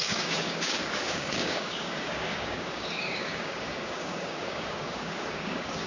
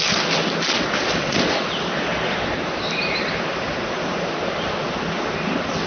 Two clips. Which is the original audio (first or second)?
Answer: second